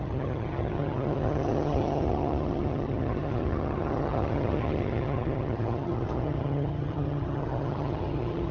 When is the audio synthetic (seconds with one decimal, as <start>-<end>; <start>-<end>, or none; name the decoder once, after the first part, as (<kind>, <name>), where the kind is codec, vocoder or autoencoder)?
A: 0.0-8.5 (vocoder, HiFi-GAN)